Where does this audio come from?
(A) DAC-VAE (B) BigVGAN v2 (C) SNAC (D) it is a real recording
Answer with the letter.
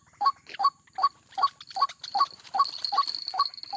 D